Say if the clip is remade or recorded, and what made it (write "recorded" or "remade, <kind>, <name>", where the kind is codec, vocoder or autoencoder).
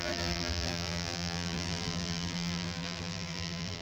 remade, vocoder, BigVGAN v2